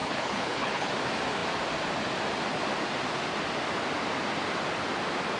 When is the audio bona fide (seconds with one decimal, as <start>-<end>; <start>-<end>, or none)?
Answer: 0.9-5.4